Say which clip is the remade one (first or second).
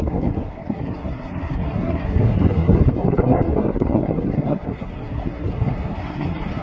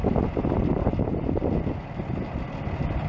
first